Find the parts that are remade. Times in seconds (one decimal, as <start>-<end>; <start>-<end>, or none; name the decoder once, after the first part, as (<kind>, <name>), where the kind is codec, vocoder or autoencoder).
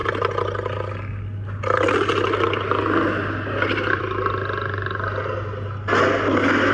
none